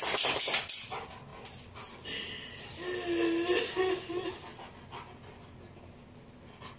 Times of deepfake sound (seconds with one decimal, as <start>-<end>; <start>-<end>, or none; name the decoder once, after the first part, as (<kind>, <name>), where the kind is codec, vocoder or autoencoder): none